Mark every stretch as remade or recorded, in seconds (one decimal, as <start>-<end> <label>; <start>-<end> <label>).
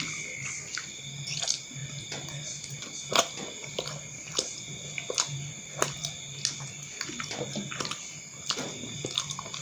0.0-9.6 recorded